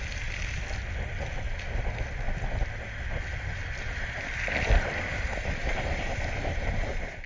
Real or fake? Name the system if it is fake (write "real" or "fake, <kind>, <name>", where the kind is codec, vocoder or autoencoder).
real